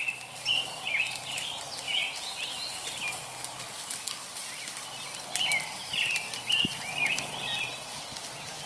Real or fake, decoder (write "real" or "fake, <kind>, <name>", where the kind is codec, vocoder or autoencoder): real